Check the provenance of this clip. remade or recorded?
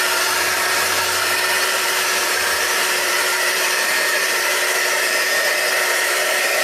remade